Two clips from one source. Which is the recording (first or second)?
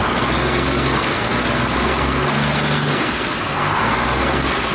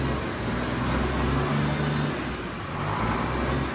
second